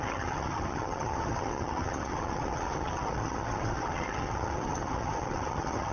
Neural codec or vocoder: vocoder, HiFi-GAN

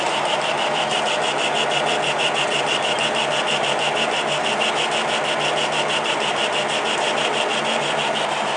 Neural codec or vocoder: none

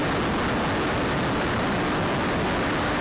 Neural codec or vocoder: none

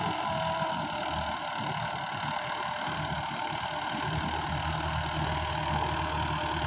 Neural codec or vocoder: none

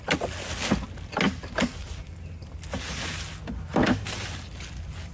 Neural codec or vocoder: none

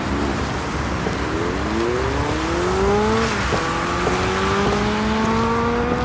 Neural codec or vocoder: none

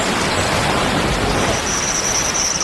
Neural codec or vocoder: none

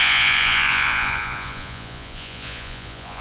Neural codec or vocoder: vocoder, Vocos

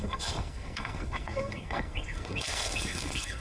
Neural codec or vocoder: codec, SNAC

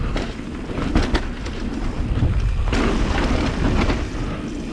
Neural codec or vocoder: none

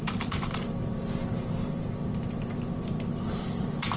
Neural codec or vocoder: vocoder, BigVGAN v2